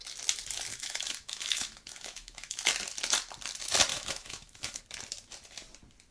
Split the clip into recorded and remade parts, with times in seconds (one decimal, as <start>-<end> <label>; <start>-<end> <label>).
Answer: 0.0-0.7 recorded; 0.7-2.7 remade; 2.7-3.9 recorded; 3.9-4.8 remade; 4.8-6.1 recorded